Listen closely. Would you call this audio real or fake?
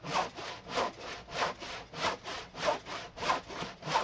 real